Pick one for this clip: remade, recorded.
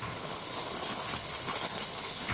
remade